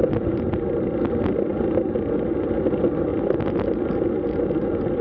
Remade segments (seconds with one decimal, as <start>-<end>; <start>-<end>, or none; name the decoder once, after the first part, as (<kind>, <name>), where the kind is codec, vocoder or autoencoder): none